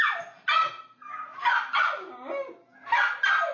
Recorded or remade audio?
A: recorded